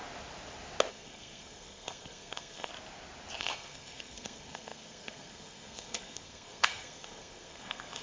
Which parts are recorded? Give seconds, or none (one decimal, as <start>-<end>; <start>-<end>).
0.0-0.9; 2.7-3.4